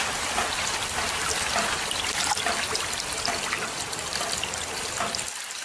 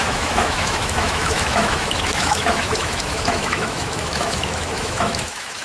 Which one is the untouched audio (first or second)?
first